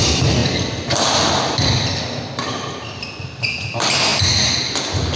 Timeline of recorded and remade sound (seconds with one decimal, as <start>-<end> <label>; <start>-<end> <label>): 0.0-5.2 recorded